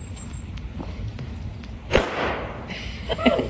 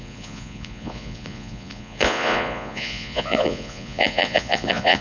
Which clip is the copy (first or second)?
second